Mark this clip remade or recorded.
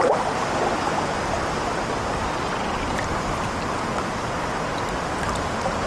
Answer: recorded